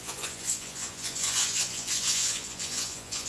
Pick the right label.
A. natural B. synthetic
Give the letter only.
B